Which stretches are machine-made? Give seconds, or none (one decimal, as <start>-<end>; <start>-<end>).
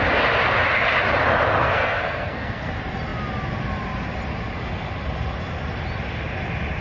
1.6-2.7